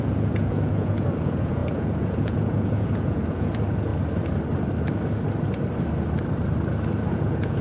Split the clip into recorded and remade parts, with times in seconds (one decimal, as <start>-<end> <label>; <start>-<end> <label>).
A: 0.0-3.9 remade; 3.9-7.1 recorded; 7.1-7.6 remade